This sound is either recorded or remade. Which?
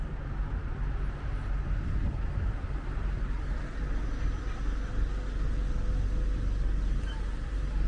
recorded